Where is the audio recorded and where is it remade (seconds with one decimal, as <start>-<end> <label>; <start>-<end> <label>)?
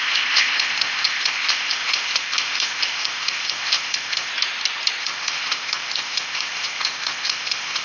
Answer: 0.0-4.3 remade; 4.3-5.0 recorded; 5.0-7.8 remade